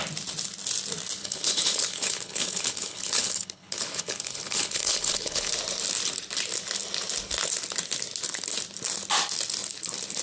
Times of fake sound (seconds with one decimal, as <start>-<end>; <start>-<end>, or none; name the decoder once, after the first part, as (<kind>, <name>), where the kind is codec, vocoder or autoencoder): 1.2-5.5 (codec, HILCodec)